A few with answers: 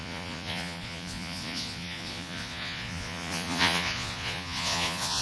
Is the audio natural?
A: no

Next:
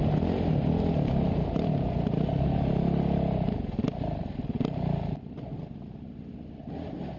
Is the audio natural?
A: yes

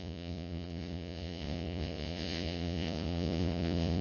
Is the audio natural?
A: no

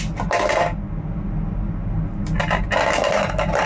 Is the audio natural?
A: yes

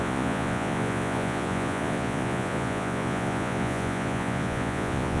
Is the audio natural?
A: no